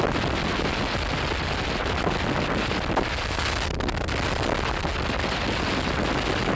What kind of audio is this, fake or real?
real